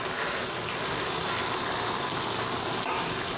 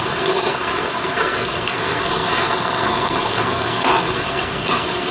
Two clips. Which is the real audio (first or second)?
first